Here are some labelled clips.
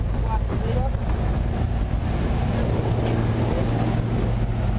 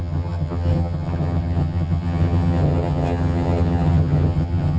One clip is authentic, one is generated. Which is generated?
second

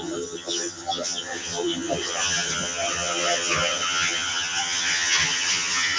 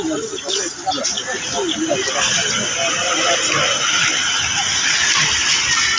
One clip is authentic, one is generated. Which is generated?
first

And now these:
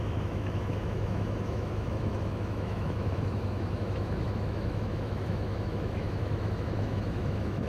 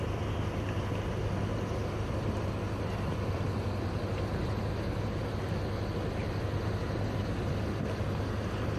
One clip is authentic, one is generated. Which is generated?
first